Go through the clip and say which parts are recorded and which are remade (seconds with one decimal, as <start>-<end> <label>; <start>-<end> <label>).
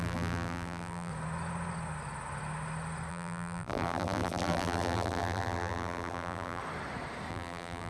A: 0.0-1.1 remade; 1.1-3.1 recorded; 3.1-6.6 remade; 6.6-7.3 recorded; 7.3-7.9 remade